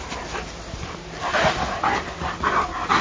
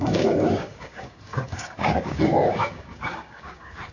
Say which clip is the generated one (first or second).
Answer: second